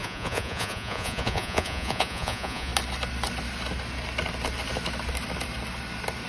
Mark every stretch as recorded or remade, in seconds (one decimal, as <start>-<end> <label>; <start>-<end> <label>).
0.0-2.7 remade; 2.7-6.3 recorded